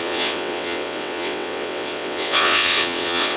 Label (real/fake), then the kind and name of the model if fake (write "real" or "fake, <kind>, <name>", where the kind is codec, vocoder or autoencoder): fake, vocoder, WaveNeXt